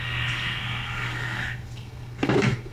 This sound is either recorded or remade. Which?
remade